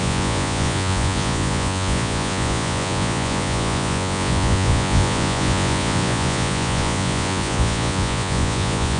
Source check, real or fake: fake